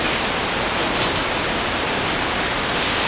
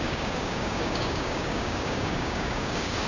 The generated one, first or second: second